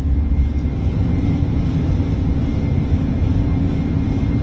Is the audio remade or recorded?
remade